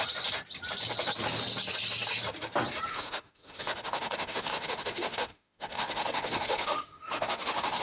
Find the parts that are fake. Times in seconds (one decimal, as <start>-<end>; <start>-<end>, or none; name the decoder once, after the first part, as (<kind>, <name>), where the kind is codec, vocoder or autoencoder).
2.9-7.8 (autoencoder, DAC-VAE)